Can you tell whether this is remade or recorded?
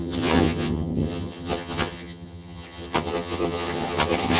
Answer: remade